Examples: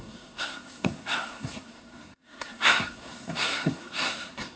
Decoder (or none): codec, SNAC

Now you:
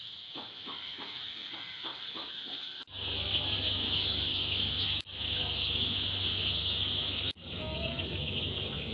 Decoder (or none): codec, SNAC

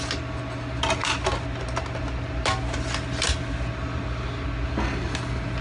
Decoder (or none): none